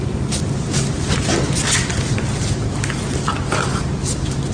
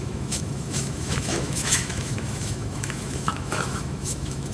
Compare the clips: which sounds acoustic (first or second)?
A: first